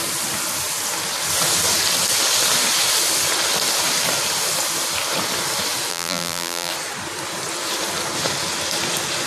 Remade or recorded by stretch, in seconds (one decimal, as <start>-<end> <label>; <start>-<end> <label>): 0.0-5.9 recorded; 5.9-6.7 remade; 6.7-9.3 recorded